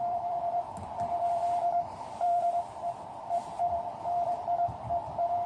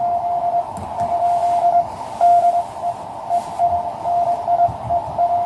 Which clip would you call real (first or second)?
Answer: second